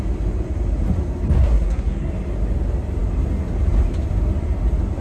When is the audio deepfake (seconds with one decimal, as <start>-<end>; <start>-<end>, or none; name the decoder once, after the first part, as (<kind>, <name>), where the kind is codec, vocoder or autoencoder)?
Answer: 1.4-2.1 (codec, SNAC)